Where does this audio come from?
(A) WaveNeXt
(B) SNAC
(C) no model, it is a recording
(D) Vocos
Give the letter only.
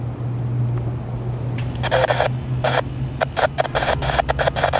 C